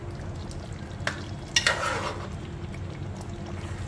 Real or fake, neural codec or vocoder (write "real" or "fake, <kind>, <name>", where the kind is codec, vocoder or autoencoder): real